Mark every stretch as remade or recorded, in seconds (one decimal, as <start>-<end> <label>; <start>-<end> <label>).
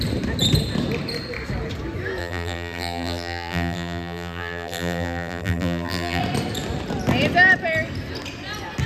0.0-2.2 recorded; 2.2-6.2 remade; 6.2-8.9 recorded